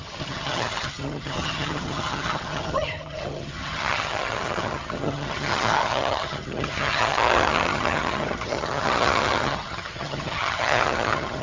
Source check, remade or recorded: remade